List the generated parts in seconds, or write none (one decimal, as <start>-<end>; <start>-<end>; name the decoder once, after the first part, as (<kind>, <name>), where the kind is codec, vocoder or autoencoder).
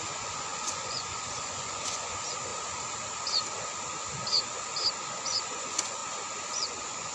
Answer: 0.0-2.5 (vocoder, Vocos); 5.0-6.0; 6.5-7.1